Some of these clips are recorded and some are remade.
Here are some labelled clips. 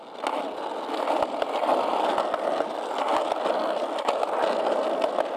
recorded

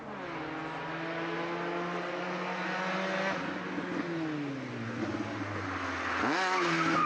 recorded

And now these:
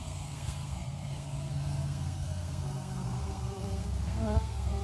remade